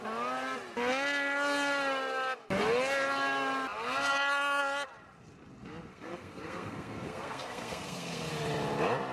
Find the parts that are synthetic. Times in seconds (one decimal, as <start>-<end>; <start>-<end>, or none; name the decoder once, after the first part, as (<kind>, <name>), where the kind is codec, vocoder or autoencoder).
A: 5.9-8.3 (codec, SNAC)